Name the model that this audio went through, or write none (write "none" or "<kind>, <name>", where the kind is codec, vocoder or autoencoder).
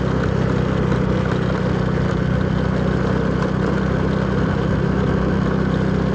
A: none